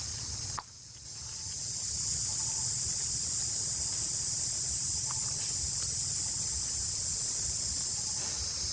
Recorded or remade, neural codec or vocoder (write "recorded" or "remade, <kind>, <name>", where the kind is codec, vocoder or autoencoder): recorded